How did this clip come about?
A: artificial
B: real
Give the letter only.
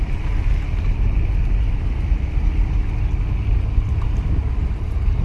A